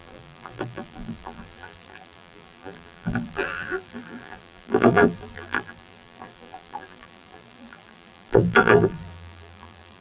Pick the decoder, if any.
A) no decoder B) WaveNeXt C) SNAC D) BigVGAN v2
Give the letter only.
D